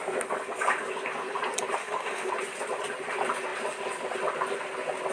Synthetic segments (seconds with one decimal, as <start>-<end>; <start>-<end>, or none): 1.8-2.3